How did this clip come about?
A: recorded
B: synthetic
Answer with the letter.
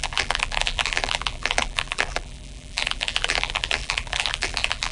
B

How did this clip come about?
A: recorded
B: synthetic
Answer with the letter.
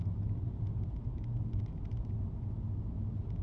A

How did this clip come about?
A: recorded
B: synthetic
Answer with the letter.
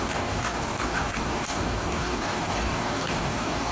B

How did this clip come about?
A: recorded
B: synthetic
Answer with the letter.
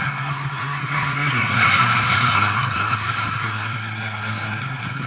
B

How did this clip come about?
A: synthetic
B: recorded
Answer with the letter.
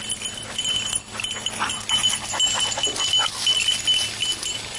B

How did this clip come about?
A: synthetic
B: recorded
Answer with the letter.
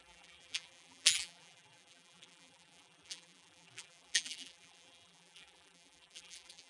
A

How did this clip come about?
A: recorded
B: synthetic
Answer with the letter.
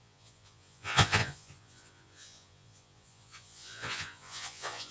B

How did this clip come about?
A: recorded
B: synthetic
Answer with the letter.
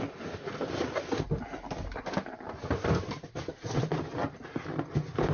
A